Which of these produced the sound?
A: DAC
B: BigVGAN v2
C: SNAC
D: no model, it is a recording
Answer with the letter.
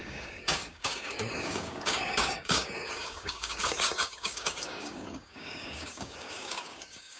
A